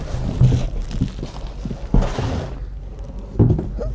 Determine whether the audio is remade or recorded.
recorded